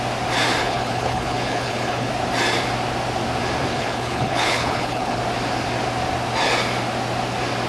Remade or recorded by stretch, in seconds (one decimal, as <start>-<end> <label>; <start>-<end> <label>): 0.0-0.6 recorded; 0.6-2.1 remade; 2.1-3.7 recorded; 3.7-5.2 remade; 5.2-7.7 recorded